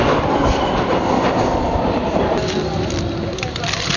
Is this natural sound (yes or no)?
yes